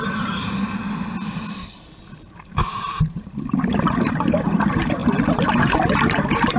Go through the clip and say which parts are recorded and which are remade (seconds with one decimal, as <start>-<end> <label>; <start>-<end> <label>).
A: 0.0-0.8 remade; 0.8-2.0 recorded; 2.0-5.0 remade; 5.0-5.6 recorded; 5.6-6.6 remade